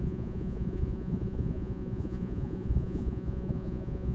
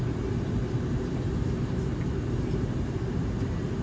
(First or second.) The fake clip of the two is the first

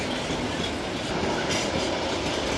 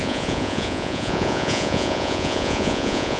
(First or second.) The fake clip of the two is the second